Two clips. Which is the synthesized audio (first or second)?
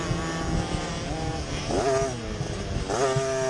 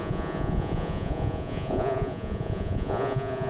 second